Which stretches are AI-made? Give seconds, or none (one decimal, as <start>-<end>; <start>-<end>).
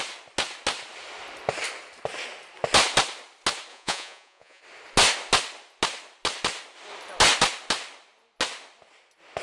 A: 3.7-4.6